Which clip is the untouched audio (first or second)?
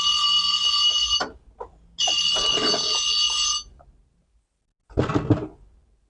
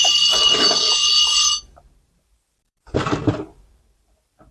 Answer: first